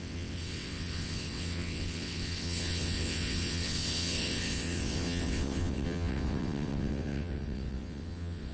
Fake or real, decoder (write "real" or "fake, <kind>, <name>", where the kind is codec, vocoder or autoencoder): fake, vocoder, WaveNeXt